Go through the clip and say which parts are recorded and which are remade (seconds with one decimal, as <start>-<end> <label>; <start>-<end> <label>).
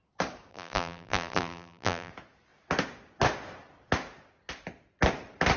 0.0-0.5 recorded; 0.5-2.1 remade; 2.1-5.6 recorded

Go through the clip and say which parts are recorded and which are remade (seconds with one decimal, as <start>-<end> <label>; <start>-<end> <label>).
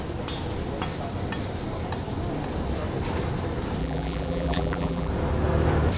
0.0-3.8 recorded; 3.8-5.1 remade; 5.1-6.0 recorded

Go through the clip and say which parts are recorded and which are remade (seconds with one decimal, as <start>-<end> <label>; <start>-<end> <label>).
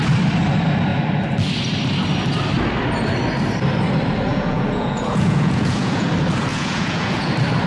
0.0-4.3 recorded; 4.3-6.1 remade; 6.1-6.5 recorded; 6.5-7.3 remade; 7.3-7.7 recorded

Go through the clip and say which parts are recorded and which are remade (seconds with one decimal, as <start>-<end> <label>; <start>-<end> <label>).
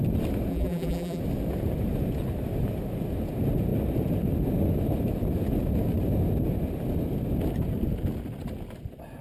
0.0-0.5 recorded; 0.5-1.2 remade; 1.2-9.2 recorded